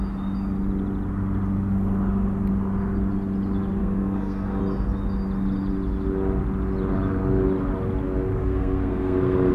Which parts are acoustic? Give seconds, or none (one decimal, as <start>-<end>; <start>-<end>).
0.0-3.8; 4.6-8.3